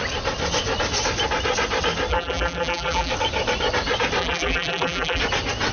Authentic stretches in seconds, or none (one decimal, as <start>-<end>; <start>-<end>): 0.0-2.1; 3.1-4.2; 5.2-5.7